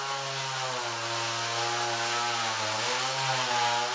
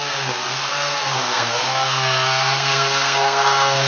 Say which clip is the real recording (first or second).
first